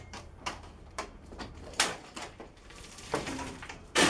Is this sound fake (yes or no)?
yes